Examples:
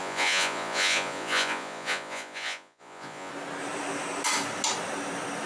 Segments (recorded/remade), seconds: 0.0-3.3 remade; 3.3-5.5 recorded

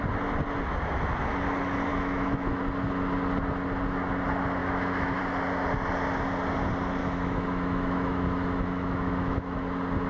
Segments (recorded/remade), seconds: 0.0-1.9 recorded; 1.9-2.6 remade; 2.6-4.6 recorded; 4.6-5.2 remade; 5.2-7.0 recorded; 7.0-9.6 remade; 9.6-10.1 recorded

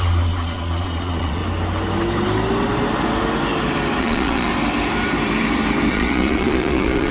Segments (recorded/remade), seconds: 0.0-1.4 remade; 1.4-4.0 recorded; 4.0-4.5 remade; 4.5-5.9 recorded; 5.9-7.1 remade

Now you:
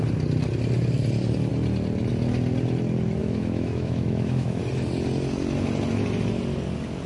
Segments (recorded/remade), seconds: 0.0-3.2 recorded; 3.2-4.6 remade; 4.6-7.1 recorded